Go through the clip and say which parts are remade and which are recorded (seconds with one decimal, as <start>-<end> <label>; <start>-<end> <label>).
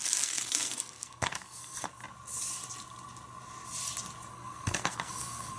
0.0-2.0 remade; 2.0-4.3 recorded; 4.3-5.6 remade